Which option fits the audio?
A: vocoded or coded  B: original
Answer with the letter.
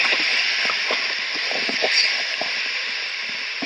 B